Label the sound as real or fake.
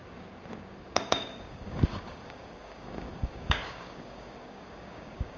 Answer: fake